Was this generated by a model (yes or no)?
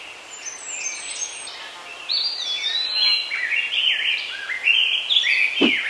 no